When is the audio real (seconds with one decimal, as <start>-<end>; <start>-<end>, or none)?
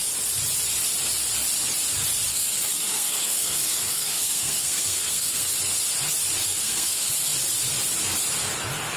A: 0.0-2.3; 5.5-6.4; 7.1-9.0